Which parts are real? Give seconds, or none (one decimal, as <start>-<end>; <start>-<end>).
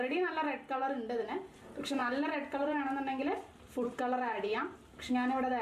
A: 0.0-2.0; 5.1-5.6